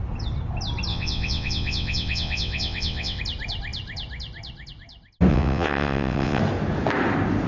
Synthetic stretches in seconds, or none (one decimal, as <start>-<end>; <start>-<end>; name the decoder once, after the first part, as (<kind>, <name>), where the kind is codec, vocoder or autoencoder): 0.9-3.2 (vocoder, WaveNeXt); 5.3-6.4